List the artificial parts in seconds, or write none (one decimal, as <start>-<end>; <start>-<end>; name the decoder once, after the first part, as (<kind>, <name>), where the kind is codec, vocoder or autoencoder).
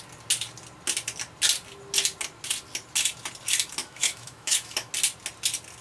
3.8-4.9 (autoencoder, DAC-VAE)